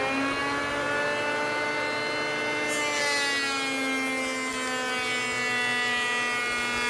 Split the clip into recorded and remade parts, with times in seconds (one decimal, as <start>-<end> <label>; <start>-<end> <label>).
0.0-6.9 recorded